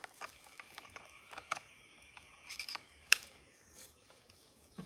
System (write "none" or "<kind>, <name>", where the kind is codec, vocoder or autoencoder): codec, DAC